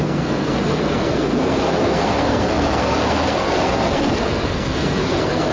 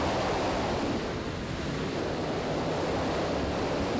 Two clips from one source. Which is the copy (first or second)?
first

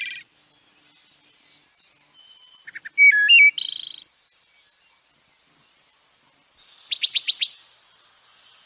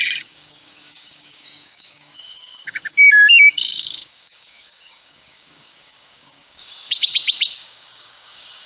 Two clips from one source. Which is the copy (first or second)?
second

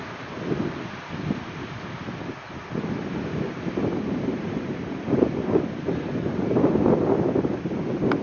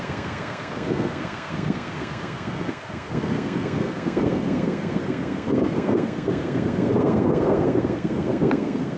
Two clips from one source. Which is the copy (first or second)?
second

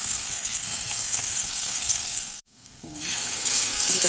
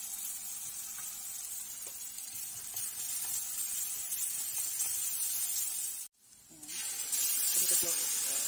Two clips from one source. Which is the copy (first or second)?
first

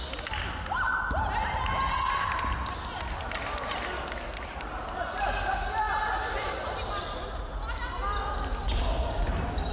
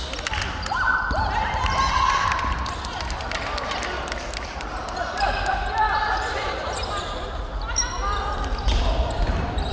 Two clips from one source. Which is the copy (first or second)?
second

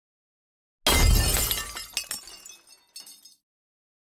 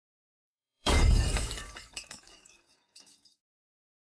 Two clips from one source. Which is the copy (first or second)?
second